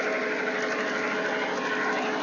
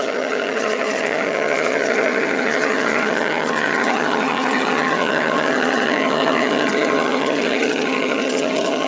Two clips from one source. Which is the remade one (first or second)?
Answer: second